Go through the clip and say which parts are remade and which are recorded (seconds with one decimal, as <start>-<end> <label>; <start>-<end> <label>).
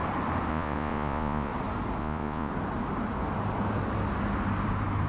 0.0-0.5 recorded; 0.5-1.5 remade; 1.5-2.0 recorded; 2.0-2.5 remade; 2.5-5.1 recorded